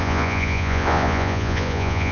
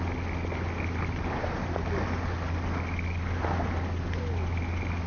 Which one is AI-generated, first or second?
first